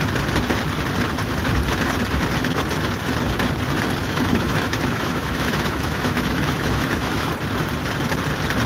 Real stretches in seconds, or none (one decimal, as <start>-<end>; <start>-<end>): 0.0-4.0; 7.3-8.7